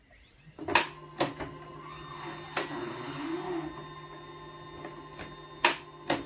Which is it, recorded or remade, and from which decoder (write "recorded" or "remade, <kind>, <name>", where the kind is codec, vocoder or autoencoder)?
recorded